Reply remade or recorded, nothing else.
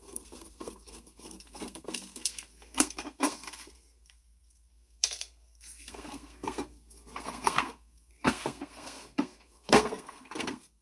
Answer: remade